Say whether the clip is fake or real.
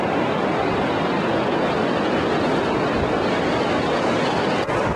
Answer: real